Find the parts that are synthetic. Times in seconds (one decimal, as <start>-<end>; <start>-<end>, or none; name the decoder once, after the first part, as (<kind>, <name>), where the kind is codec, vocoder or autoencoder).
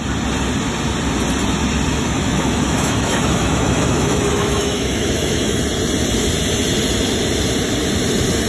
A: 1.9-5.6 (autoencoder, DAC-VAE)